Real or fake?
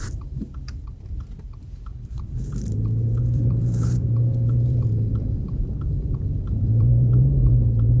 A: fake